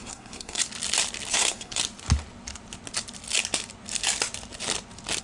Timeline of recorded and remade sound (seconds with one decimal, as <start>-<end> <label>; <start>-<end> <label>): 0.0-0.6 remade; 0.6-1.3 recorded; 1.3-1.8 remade; 1.8-5.2 recorded